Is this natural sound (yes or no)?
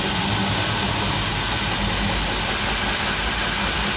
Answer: yes